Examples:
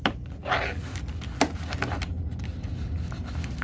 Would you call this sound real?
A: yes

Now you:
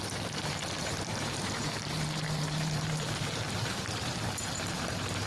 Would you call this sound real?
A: no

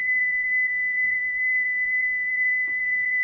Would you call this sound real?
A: no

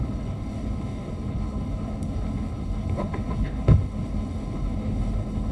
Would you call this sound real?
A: no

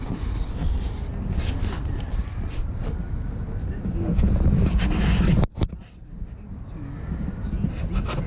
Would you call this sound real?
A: yes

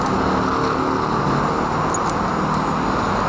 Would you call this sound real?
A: yes